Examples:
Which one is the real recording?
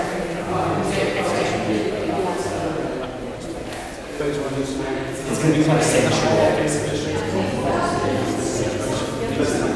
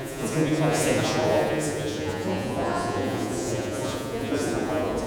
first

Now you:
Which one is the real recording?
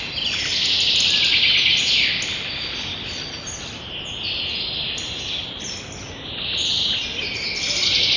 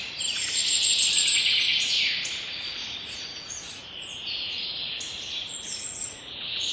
first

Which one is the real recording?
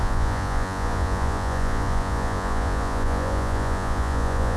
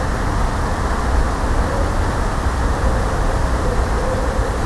second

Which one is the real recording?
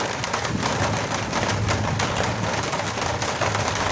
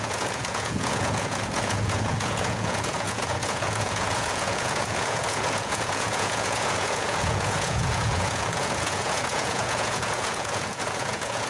first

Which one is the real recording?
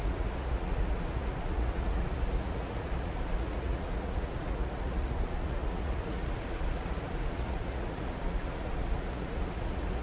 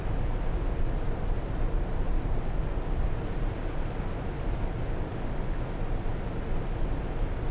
second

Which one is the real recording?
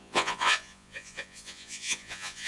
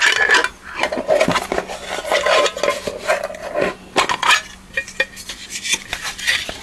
second